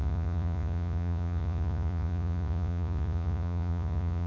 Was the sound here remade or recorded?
remade